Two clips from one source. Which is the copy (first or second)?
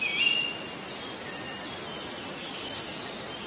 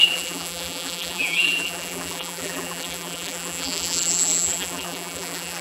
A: second